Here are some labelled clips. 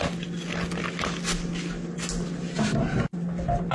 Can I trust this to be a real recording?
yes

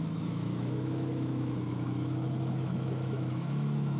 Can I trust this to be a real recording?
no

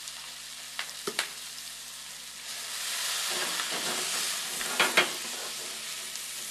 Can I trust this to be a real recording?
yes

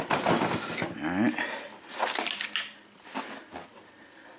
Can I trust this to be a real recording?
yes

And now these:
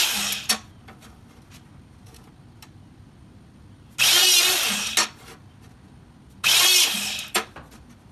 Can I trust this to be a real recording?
yes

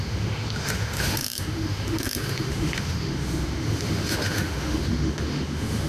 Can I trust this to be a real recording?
no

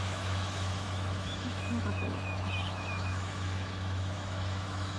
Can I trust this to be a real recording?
no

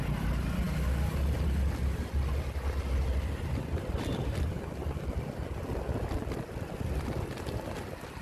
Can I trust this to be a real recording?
yes